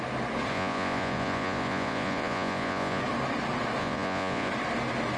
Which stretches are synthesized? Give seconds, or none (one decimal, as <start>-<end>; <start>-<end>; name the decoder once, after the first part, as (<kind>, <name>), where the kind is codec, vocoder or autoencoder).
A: 0.5-3.0 (vocoder, Vocos); 3.8-4.5